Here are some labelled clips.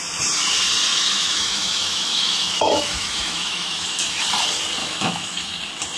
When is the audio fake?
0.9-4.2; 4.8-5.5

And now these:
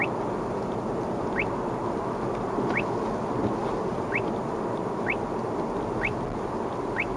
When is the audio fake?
none

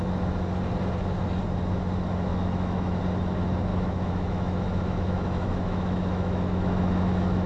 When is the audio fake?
2.3-3.0; 3.7-7.5

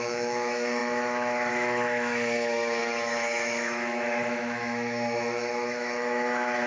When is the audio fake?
0.0-6.7